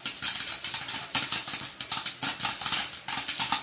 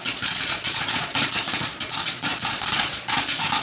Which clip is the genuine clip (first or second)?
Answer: first